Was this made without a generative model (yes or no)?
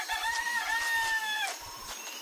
yes